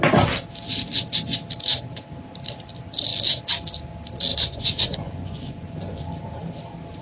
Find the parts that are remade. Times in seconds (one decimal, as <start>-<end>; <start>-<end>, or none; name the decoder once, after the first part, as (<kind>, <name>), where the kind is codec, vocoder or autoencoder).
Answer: 4.3-6.0 (vocoder, Vocos)